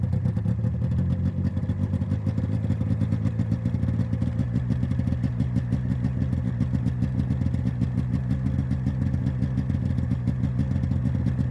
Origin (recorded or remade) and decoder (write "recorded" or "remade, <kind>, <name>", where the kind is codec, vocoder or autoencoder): recorded